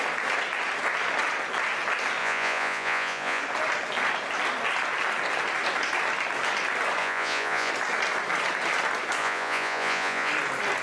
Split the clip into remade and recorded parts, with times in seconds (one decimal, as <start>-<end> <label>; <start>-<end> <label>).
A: 0.0-2.2 recorded; 2.2-3.4 remade; 3.4-7.0 recorded; 7.0-7.7 remade; 7.7-9.2 recorded; 9.2-10.3 remade; 10.3-10.8 recorded